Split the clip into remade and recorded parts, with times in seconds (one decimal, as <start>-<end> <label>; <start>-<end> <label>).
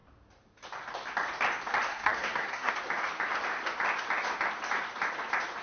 0.0-1.9 recorded; 1.9-2.7 remade; 2.7-5.6 recorded